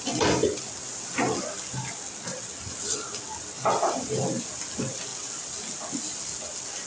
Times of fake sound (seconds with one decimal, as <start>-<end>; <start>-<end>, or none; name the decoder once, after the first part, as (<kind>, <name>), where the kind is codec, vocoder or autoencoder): none